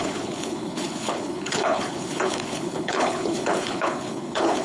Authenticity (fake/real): fake